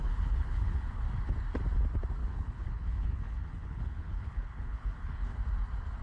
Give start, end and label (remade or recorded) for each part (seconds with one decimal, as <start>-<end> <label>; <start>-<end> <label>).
0.0-1.0 remade; 1.0-2.2 recorded; 2.2-5.4 remade; 5.4-6.0 recorded